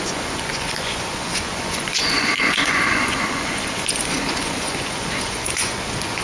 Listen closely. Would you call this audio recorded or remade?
remade